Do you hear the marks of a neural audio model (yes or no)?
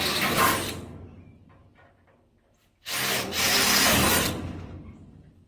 no